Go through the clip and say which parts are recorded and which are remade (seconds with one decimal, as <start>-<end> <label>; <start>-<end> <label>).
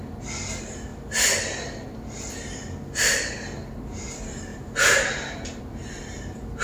0.0-4.5 recorded; 4.5-5.6 remade; 5.6-6.6 recorded